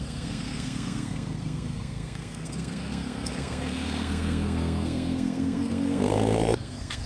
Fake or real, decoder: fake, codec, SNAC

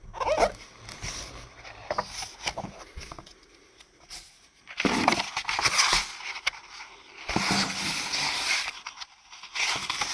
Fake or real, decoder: real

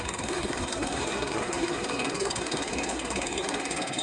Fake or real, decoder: fake, codec, SNAC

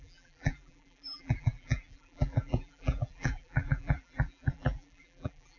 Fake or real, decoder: fake, vocoder, BigVGAN v2